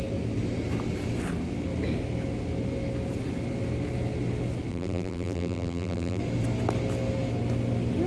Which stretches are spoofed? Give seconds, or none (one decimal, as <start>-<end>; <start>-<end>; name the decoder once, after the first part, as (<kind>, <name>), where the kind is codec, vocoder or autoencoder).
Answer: 4.7-6.2 (vocoder, BigVGAN v2)